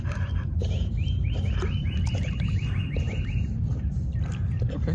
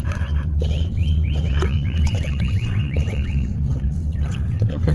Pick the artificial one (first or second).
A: second